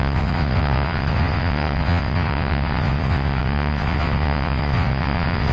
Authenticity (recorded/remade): remade